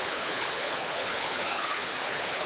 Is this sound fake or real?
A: fake